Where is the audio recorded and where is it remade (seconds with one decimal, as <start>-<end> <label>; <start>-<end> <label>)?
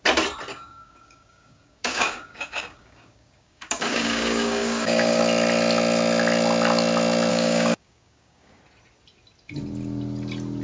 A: 0.0-0.5 recorded; 0.5-5.2 remade; 5.2-7.3 recorded; 7.3-8.6 remade; 8.6-10.6 recorded